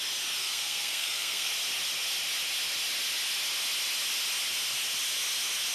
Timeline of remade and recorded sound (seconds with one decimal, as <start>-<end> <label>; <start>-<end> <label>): 0.0-0.4 recorded; 0.4-1.5 remade; 1.5-5.7 recorded